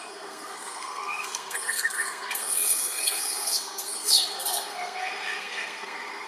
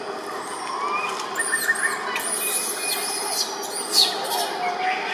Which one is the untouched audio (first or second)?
second